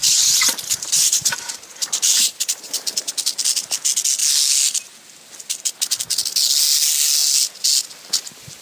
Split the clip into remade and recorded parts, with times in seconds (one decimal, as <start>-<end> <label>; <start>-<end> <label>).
0.0-3.1 remade; 3.1-8.6 recorded